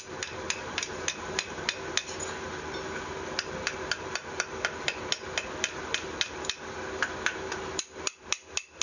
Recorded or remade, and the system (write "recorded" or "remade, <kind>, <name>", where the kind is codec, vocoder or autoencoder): recorded